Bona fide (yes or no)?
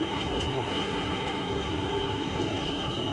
no